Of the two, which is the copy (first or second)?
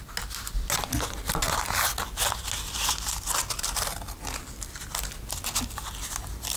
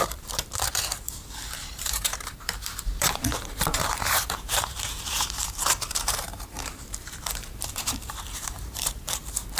second